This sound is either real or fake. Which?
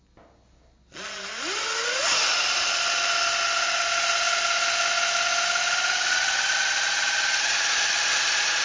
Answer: real